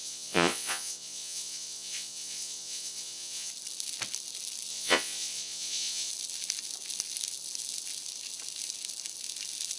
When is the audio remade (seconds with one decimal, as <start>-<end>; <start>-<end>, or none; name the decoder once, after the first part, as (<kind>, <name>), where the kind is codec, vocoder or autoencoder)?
0.0-3.5 (vocoder, Vocos); 4.7-6.1